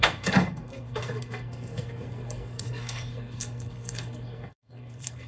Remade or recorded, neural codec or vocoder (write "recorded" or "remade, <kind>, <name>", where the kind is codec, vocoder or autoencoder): remade, codec, SNAC